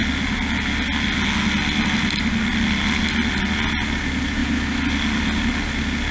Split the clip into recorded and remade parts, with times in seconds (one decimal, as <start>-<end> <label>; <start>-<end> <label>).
0.0-6.1 recorded

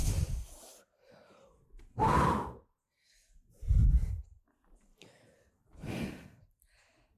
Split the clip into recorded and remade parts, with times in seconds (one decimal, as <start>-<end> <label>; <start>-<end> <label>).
0.0-7.2 recorded

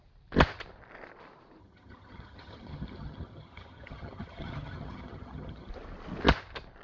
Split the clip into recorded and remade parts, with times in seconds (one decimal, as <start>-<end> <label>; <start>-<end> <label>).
0.0-1.6 recorded; 1.6-5.7 remade; 5.7-6.8 recorded

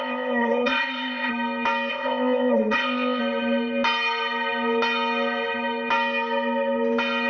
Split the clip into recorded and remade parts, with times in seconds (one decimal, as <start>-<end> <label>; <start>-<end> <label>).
0.0-1.3 remade; 1.3-1.9 recorded; 1.9-3.2 remade; 3.2-7.3 recorded

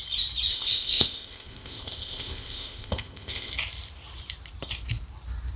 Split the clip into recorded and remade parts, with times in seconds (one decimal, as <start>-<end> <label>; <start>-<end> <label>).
0.0-0.5 recorded; 0.5-3.5 remade; 3.5-5.6 recorded

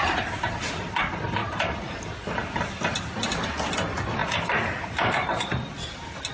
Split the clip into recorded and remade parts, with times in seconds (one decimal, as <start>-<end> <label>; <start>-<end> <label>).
0.0-6.3 recorded

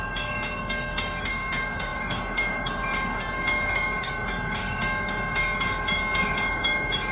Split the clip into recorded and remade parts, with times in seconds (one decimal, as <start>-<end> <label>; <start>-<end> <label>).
0.0-7.1 remade